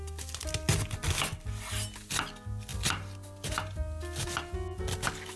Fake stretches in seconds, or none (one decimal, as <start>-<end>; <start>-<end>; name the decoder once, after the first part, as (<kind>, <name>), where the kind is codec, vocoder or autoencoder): none